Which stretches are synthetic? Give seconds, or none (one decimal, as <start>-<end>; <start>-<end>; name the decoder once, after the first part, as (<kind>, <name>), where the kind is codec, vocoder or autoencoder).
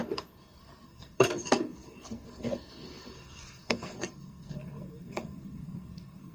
0.0-6.3 (codec, SNAC)